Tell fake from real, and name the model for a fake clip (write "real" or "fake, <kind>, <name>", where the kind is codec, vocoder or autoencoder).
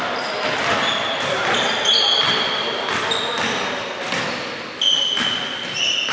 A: real